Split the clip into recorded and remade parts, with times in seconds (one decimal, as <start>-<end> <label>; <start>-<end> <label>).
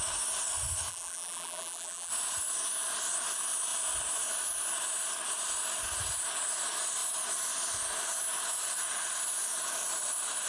0.0-0.9 recorded; 0.9-2.1 remade; 2.1-10.5 recorded